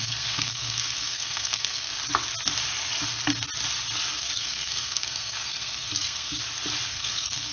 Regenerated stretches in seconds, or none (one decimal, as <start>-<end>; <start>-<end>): 0.0-1.9; 4.2-6.4; 6.9-7.5